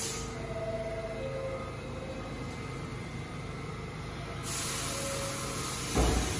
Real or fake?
real